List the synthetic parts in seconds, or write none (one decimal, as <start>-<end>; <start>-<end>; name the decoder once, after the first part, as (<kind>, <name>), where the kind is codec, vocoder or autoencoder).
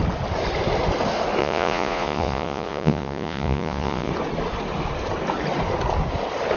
1.4-4.1 (vocoder, Vocos)